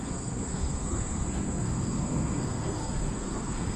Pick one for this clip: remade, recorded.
remade